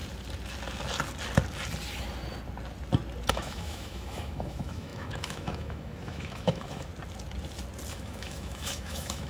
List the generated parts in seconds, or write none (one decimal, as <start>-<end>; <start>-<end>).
3.3-6.9; 7.9-9.3